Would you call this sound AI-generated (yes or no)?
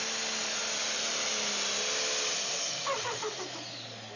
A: no